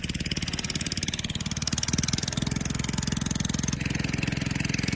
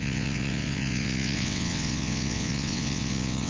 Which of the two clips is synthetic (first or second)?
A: second